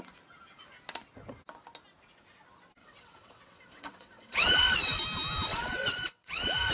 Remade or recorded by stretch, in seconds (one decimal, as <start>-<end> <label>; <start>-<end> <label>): 0.0-2.8 recorded; 2.8-5.0 remade; 5.0-5.5 recorded; 5.5-6.7 remade